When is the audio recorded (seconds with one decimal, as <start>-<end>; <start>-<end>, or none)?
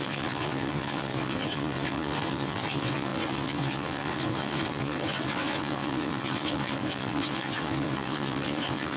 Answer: none